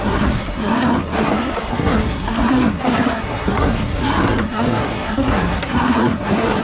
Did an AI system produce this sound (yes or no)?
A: yes